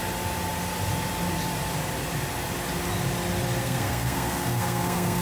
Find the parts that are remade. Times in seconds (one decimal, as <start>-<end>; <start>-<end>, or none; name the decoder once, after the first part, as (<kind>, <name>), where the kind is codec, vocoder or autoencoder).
3.6-5.2 (codec, SNAC)